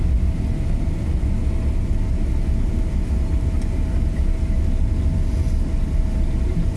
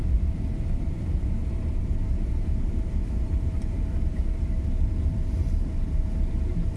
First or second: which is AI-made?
second